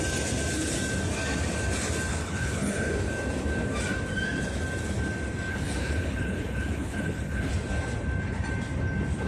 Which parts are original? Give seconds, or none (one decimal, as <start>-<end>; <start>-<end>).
0.0-2.1; 2.9-5.5; 7.5-9.3